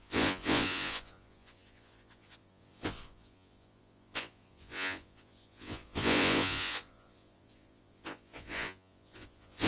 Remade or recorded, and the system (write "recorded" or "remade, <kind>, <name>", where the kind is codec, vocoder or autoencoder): remade, vocoder, Vocos